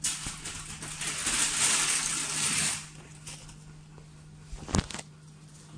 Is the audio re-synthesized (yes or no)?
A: no